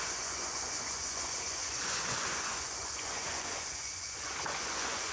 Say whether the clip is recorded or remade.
remade